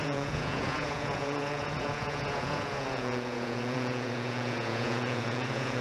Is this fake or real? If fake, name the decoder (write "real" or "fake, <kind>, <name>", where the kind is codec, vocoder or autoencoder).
fake, vocoder, Vocos